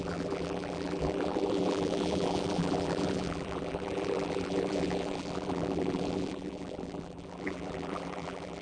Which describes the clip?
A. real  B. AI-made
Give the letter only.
B